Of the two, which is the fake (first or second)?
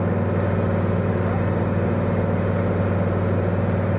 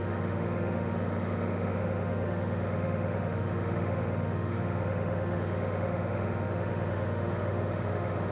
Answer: second